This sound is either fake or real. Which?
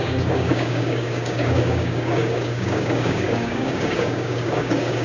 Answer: fake